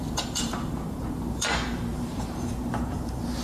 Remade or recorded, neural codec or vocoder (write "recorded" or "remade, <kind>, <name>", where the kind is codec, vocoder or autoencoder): remade, vocoder, BigVGAN v2